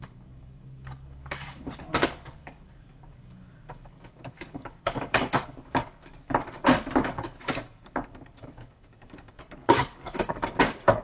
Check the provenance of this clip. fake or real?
fake